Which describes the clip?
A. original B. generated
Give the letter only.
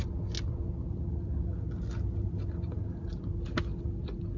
A